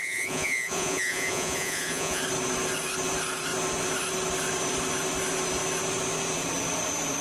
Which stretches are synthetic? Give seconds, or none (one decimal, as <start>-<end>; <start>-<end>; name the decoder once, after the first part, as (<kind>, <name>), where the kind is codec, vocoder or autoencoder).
0.0-2.2 (vocoder, Vocos)

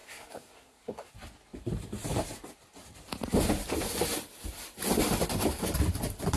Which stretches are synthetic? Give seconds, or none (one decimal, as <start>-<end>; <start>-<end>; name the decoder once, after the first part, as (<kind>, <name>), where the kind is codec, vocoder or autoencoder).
0.0-1.1 (codec, SNAC)

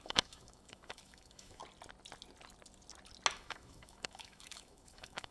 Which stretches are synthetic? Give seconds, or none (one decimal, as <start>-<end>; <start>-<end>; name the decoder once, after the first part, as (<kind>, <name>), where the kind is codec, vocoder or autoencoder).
0.0-1.6 (autoencoder, DAC-VAE); 3.3-5.3

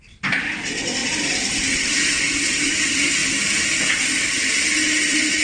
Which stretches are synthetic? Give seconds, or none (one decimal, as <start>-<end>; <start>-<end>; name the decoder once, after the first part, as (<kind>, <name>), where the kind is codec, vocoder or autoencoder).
0.0-5.4 (vocoder, BigVGAN v2)

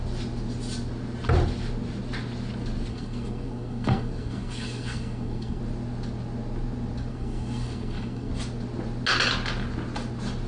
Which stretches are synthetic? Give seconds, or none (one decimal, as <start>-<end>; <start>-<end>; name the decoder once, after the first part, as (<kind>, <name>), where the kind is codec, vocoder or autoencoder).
2.9-5.6 (codec, SNAC); 7.1-8.3

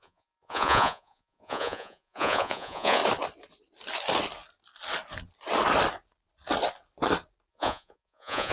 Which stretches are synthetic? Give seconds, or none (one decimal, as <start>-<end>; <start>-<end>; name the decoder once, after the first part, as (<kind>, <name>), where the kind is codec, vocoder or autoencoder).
0.0-3.0 (vocoder, Vocos); 7.5-8.5

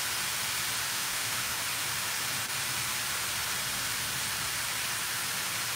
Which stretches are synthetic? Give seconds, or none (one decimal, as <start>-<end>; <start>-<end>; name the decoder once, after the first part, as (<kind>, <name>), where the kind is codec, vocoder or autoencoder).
0.9-1.6 (autoencoder, DAC-VAE)